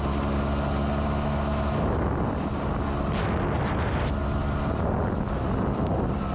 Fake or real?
real